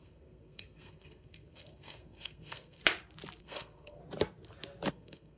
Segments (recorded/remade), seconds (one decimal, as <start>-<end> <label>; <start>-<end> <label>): 0.0-2.8 remade; 2.8-3.4 recorded; 3.4-4.0 remade; 4.0-4.9 recorded; 4.9-5.4 remade